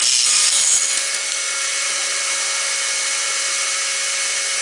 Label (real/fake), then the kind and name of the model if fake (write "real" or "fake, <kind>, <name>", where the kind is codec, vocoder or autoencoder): real